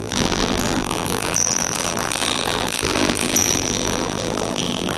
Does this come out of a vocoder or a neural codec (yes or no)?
yes